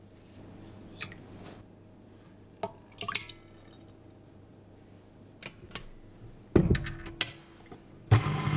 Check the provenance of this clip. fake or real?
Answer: real